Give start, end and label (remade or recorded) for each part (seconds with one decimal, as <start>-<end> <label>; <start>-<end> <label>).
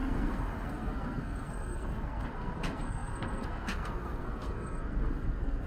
0.0-5.7 remade